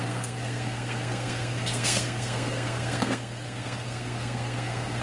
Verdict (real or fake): fake